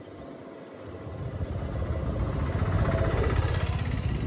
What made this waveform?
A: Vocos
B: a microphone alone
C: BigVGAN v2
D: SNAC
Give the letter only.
B